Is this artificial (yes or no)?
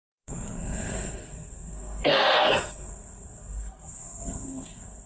yes